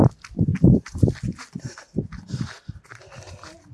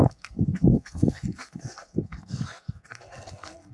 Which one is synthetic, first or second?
second